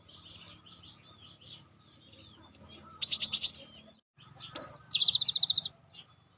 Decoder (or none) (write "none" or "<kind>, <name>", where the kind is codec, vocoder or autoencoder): none